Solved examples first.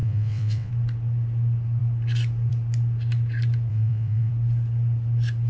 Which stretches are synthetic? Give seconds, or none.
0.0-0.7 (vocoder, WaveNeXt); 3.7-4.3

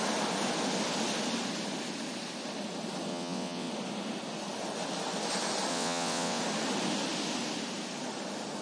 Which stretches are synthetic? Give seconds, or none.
3.1-3.7 (vocoder, WaveNeXt); 5.7-6.4

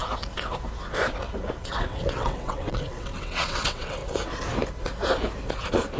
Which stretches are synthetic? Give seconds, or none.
1.6-4.0 (vocoder, WaveNeXt)

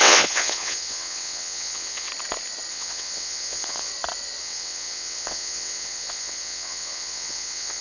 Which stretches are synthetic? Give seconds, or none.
0.0-2.1 (vocoder, WaveNeXt); 2.7-3.9; 4.4-7.8

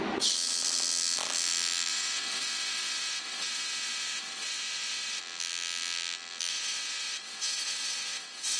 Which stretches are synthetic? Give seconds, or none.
1.9-5.2 (vocoder, WaveNeXt); 6.5-8.6

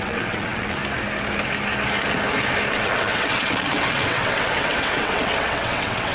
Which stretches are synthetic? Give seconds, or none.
0.0-0.8 (vocoder, WaveNeXt); 2.7-6.1